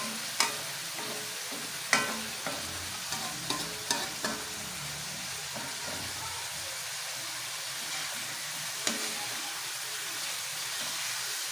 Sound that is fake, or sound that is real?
real